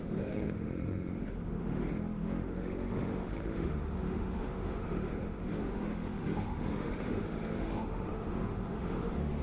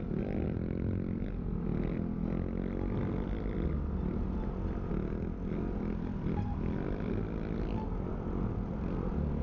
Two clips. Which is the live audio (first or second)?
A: second